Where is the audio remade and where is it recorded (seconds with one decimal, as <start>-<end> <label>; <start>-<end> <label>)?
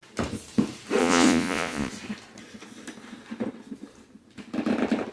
0.0-1.0 recorded; 1.0-1.9 remade; 1.9-5.1 recorded